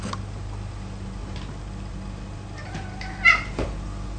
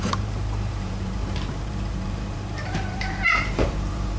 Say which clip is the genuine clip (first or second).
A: first